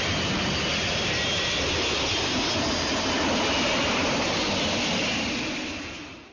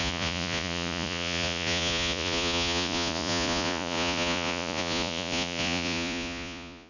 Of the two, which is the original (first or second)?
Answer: first